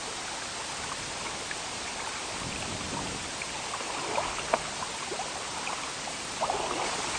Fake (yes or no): no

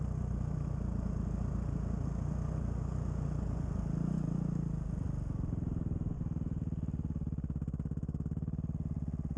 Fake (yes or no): no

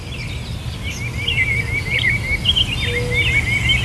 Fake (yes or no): no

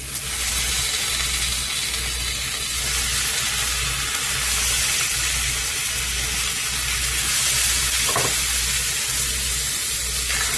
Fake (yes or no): no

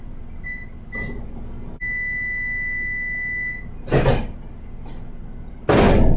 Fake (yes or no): no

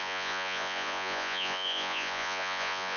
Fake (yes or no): yes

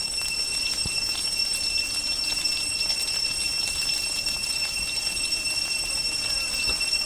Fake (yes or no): no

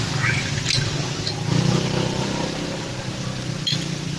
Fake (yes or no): no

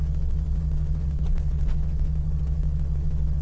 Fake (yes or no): yes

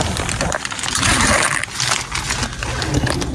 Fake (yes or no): no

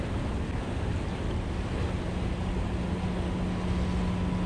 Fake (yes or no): no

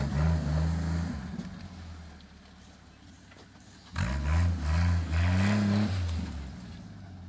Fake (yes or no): no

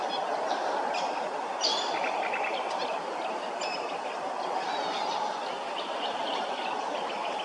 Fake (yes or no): no